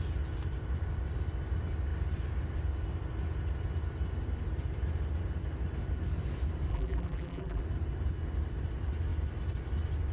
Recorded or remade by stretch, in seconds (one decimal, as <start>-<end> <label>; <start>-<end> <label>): 0.0-6.7 recorded; 6.7-7.6 remade; 7.6-10.1 recorded